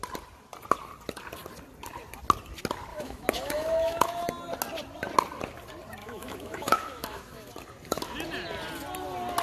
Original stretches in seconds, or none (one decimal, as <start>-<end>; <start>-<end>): 0.0-2.9; 4.3-6.0; 7.5-9.4